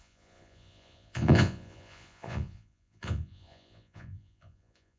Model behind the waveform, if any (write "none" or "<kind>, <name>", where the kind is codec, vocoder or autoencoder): vocoder, Vocos